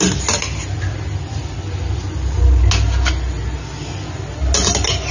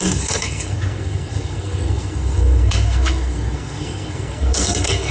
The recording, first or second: first